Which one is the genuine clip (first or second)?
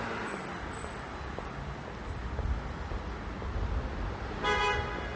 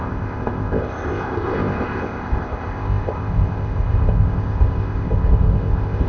first